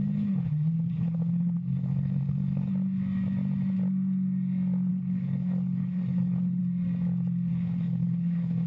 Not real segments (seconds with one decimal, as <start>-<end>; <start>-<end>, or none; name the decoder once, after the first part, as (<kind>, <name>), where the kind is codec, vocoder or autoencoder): 0.0-2.7 (codec, HILCodec); 4.9-6.6; 7.5-8.7